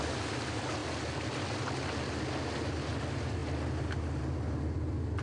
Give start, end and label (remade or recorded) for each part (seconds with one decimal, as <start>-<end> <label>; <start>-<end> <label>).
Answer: 0.0-5.2 recorded